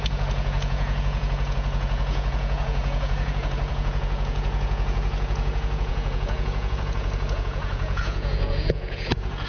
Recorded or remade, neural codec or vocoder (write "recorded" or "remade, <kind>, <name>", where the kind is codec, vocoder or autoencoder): remade, vocoder, Vocos